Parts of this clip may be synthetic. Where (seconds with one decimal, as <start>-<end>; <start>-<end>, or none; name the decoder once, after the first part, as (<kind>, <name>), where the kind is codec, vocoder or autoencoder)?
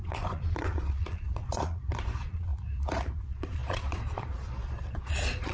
0.0-2.5 (vocoder, Vocos); 3.2-5.5